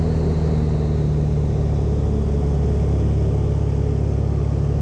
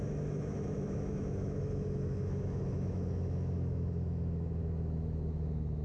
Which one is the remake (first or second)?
second